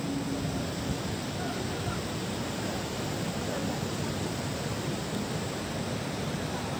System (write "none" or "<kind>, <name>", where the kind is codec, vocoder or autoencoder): none